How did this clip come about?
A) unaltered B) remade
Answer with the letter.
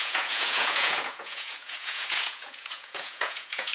B